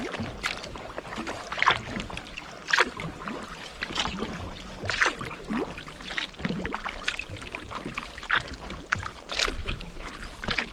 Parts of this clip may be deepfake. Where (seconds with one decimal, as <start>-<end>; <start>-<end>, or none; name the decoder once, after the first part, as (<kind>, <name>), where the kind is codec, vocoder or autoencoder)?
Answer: 9.6-10.1 (autoencoder, DAC-VAE)